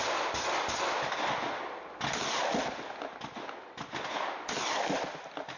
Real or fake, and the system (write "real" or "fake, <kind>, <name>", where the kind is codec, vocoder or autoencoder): real